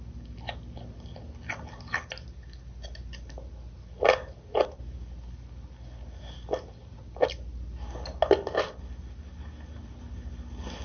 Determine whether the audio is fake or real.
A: real